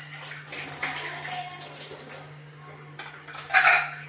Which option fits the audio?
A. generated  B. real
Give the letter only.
B